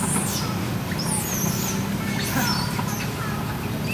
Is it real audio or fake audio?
real